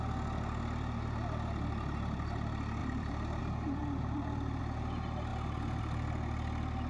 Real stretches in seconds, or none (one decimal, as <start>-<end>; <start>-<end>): 0.0-2.8; 3.4-3.8; 4.6-6.9